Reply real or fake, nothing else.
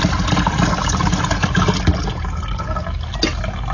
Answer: real